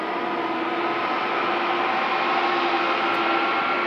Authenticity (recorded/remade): recorded